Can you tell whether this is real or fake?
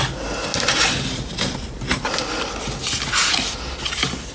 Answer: real